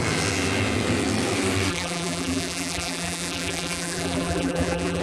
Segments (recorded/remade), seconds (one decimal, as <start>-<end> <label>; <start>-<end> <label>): 0.0-1.7 recorded; 1.7-5.0 remade